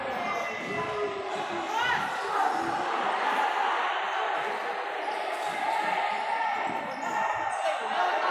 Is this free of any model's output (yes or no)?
yes